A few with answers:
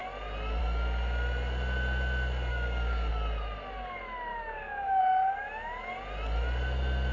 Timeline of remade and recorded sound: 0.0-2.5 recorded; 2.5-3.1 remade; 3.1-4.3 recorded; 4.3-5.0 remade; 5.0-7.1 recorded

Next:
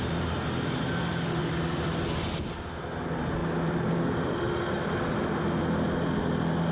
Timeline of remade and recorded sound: 0.0-6.7 recorded

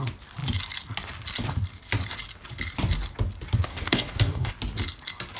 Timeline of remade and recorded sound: 0.0-3.7 recorded; 3.7-4.5 remade; 4.5-5.4 recorded

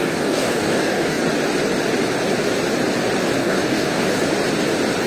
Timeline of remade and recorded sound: 0.0-1.2 remade; 1.2-3.4 recorded; 3.4-4.2 remade; 4.2-5.1 recorded

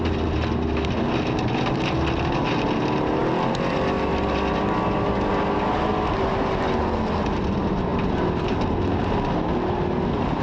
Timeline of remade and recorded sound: 0.0-10.4 recorded

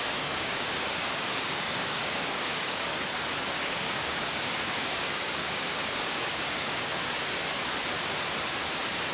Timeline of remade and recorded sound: 0.0-2.9 remade; 2.9-3.5 recorded; 3.5-7.4 remade; 7.4-9.1 recorded

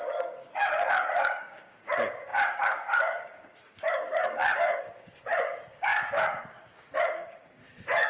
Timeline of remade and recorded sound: 0.0-8.1 remade

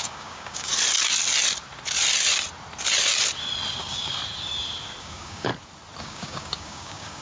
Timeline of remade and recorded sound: 0.0-0.7 remade; 0.7-3.8 recorded; 3.8-4.2 remade; 4.2-5.0 recorded; 5.0-5.5 remade; 5.5-6.0 recorded; 6.0-7.2 remade